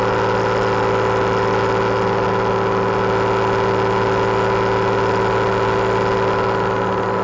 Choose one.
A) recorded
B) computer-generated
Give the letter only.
A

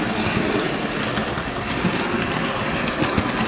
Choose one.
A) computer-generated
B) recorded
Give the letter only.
B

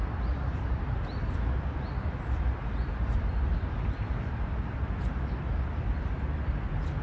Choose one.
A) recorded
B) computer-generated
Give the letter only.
B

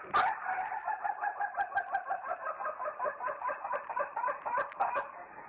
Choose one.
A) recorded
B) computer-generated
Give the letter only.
A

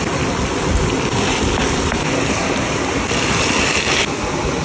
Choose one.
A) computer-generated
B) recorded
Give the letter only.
B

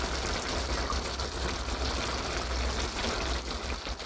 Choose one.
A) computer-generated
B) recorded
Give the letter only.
B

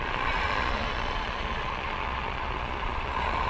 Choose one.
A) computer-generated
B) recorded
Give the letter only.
A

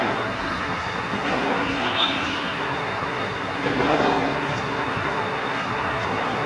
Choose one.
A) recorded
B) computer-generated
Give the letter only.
B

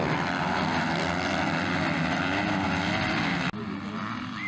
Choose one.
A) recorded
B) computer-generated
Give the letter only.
A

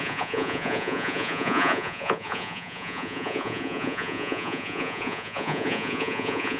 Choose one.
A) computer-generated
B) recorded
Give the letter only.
A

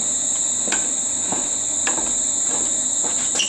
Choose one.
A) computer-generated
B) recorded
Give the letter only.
B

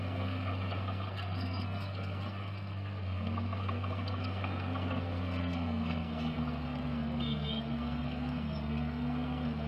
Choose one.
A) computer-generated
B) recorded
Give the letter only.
A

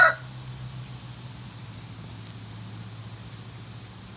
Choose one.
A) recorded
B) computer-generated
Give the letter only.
A